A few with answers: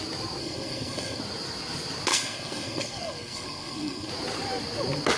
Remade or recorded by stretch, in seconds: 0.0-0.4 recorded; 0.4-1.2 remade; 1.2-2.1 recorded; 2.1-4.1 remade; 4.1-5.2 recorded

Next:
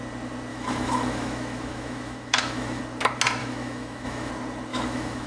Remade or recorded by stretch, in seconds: 0.0-0.5 recorded; 0.5-2.8 remade; 2.8-3.4 recorded; 3.4-4.3 remade; 4.3-4.7 recorded; 4.7-5.3 remade

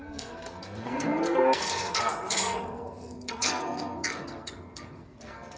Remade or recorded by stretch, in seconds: 0.0-5.6 remade

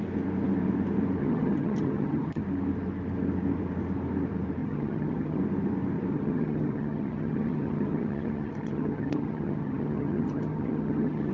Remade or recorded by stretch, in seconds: 0.0-1.2 recorded; 1.2-2.4 remade; 2.4-4.6 recorded; 4.6-5.4 remade; 5.4-6.1 recorded; 6.1-11.3 remade

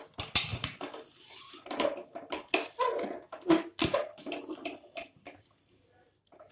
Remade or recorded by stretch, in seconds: 0.0-6.5 recorded

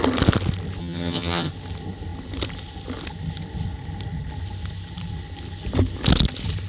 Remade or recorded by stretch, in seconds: 0.0-0.8 recorded; 0.8-1.5 remade; 1.5-6.7 recorded